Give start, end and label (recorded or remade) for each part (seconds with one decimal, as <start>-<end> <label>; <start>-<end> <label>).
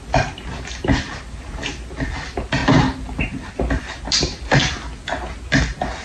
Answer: 0.0-6.0 recorded